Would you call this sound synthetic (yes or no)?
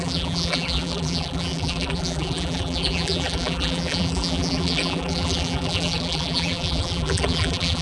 yes